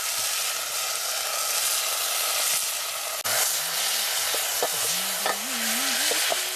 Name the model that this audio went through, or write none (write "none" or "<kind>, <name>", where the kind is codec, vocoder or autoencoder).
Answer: none